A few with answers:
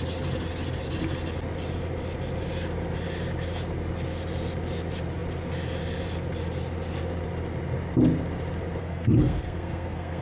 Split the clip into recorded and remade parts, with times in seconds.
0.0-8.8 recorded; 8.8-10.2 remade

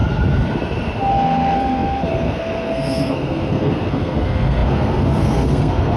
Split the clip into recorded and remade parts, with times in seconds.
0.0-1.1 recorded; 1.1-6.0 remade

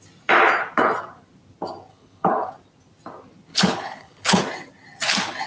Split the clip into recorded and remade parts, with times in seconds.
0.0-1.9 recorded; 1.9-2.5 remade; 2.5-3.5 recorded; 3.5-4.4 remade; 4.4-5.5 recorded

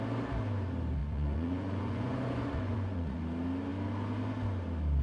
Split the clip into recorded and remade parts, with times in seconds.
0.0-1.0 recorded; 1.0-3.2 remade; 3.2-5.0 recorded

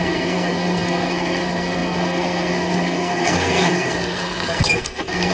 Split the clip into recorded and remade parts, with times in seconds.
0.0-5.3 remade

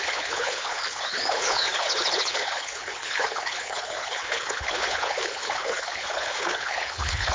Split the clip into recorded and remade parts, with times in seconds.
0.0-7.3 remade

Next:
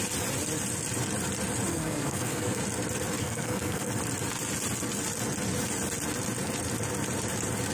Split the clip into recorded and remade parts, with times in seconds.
0.0-1.7 recorded; 1.7-2.6 remade; 2.6-3.2 recorded; 3.2-3.9 remade; 3.9-7.7 recorded

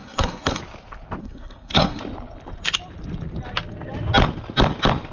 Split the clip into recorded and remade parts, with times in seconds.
0.0-0.6 remade; 0.6-1.2 recorded; 1.2-2.0 remade; 2.0-5.1 recorded